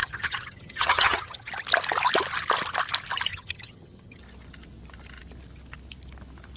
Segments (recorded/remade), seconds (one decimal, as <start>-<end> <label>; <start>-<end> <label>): 0.0-1.5 remade; 1.5-3.3 recorded; 3.3-4.2 remade; 4.2-6.6 recorded